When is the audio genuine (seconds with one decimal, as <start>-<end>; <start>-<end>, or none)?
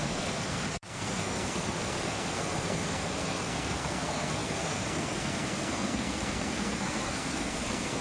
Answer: none